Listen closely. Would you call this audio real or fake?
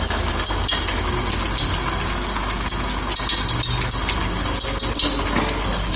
real